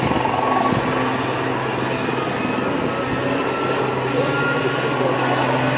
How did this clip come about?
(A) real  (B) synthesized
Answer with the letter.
A